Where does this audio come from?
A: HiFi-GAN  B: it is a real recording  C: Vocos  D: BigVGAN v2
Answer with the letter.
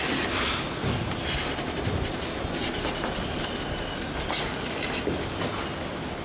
B